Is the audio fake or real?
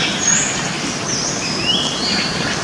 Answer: real